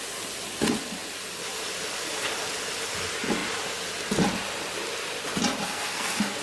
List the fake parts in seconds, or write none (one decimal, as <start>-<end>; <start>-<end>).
5.6-6.4